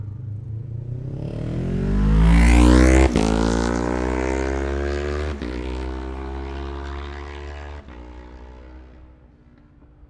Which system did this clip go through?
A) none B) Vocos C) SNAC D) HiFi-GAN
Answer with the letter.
A